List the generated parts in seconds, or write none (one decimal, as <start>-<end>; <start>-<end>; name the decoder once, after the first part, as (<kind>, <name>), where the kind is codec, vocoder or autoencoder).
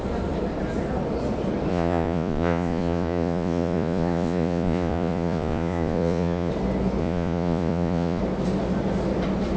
1.7-6.5 (vocoder, Vocos); 7.0-8.2